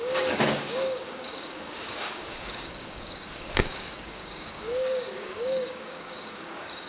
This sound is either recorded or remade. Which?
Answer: remade